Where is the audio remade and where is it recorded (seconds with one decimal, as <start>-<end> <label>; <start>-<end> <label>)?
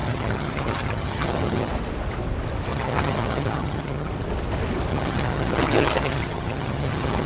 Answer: 0.0-1.7 remade; 1.7-2.7 recorded; 2.7-4.1 remade; 4.1-4.9 recorded; 4.9-7.3 remade